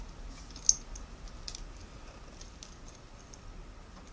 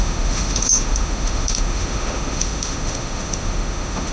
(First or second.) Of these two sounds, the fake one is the second